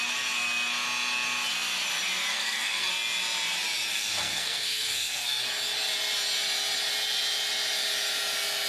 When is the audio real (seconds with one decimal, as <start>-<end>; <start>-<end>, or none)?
0.0-2.3; 2.9-3.9; 5.4-8.7